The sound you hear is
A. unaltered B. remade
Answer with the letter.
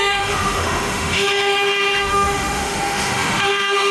B